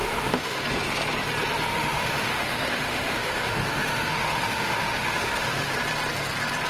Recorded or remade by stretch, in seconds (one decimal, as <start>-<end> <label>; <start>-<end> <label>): 0.0-0.6 remade; 0.6-1.7 recorded; 1.7-5.7 remade; 5.7-6.7 recorded